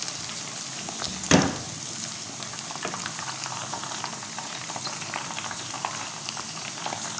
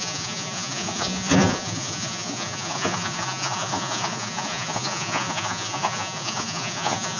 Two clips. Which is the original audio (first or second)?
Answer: first